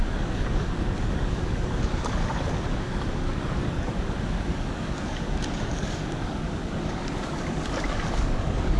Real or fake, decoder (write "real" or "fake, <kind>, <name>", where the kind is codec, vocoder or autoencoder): fake, codec, DAC